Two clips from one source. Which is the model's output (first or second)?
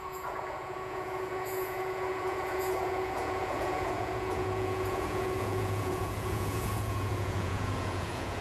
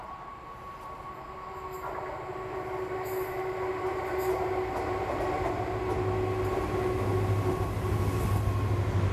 first